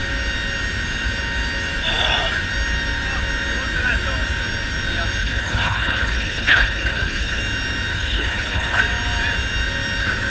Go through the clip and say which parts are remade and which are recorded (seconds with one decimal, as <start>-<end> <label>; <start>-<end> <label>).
0.0-5.2 recorded; 5.2-7.4 remade; 7.4-7.9 recorded; 7.9-8.8 remade; 8.8-10.3 recorded